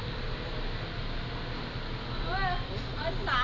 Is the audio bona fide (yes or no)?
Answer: yes